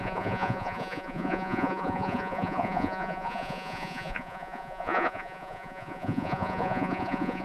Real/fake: fake